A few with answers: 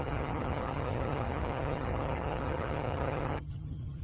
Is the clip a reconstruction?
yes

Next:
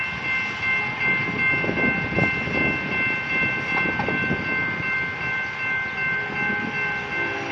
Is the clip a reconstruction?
no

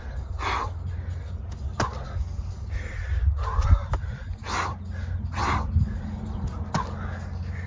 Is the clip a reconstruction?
no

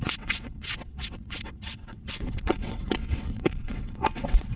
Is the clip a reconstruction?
yes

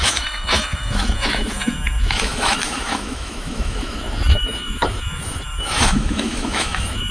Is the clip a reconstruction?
yes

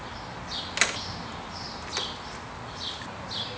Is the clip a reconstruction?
no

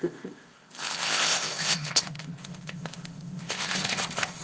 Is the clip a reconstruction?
yes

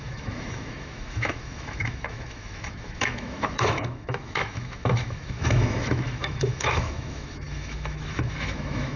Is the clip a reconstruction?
yes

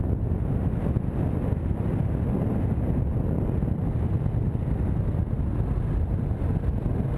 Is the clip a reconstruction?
no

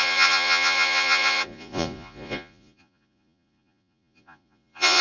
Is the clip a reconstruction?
yes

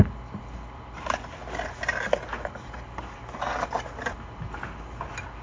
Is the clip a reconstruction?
no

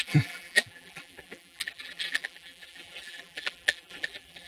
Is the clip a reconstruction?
yes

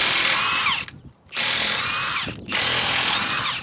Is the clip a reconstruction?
no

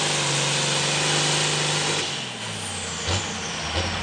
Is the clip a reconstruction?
no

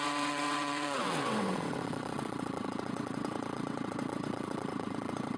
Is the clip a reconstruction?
yes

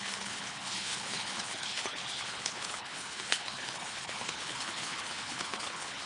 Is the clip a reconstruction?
yes